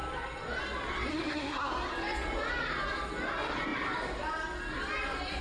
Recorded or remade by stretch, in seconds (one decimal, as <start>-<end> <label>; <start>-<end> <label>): 0.0-1.1 recorded; 1.1-1.7 remade; 1.7-5.4 recorded